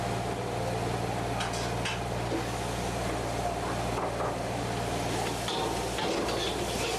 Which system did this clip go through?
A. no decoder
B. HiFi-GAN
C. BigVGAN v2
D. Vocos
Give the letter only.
A